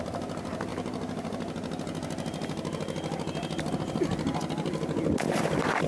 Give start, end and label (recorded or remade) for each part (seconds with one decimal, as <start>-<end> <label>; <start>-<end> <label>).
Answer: 0.0-5.9 recorded